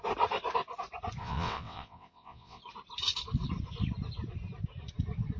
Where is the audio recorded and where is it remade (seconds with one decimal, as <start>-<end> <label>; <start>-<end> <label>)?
0.0-1.2 recorded; 1.2-2.6 remade; 2.6-5.4 recorded